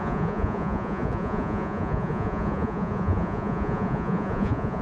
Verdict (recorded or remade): remade